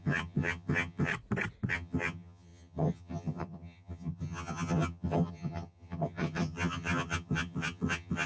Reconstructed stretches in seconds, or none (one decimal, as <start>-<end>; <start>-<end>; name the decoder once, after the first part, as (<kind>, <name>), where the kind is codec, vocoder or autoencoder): 0.0-1.1 (vocoder, HiFi-GAN); 1.7-8.3